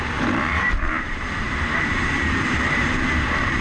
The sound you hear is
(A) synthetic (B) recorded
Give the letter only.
A